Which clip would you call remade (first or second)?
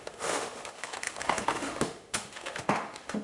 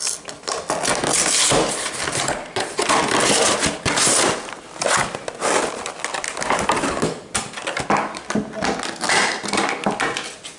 first